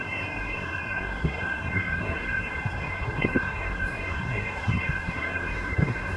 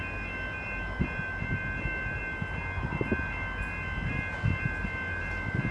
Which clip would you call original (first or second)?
second